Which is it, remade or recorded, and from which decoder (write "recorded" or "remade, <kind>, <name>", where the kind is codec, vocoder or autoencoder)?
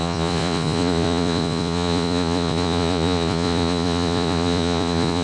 remade, vocoder, Vocos